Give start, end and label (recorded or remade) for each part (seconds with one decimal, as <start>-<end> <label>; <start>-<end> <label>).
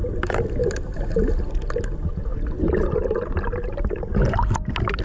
0.0-5.0 recorded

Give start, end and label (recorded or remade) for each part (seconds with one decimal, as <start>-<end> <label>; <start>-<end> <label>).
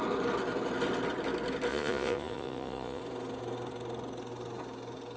0.0-1.7 recorded; 1.7-3.0 remade; 3.0-5.2 recorded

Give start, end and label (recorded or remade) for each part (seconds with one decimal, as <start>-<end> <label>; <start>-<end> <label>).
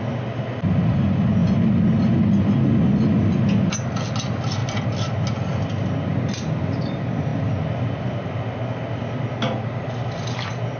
0.0-10.8 recorded